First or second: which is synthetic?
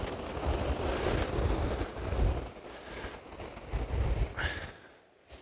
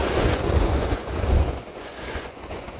second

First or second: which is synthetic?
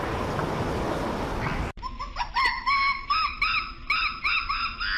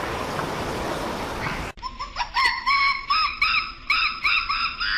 second